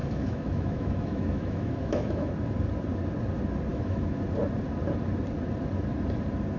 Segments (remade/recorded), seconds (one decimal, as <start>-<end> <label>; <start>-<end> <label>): 0.0-2.3 remade; 2.3-3.7 recorded; 3.7-4.2 remade; 4.2-6.6 recorded